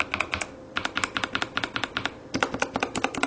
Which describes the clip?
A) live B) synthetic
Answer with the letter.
A